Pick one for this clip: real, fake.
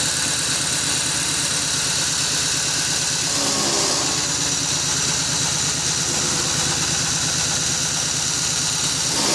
real